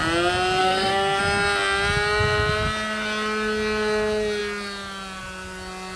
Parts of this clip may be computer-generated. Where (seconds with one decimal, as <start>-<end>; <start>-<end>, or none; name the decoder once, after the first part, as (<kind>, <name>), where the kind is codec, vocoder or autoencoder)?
0.6-1.2 (codec, SNAC)